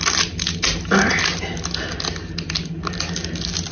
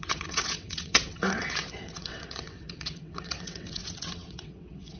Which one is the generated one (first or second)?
second